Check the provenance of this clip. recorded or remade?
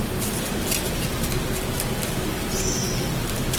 recorded